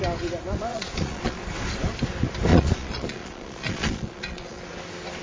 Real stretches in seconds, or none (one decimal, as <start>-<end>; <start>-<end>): 0.0-0.7; 1.4-2.5; 4.6-5.2